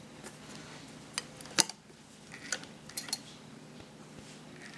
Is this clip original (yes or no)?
yes